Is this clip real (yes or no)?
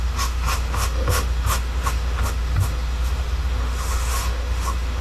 no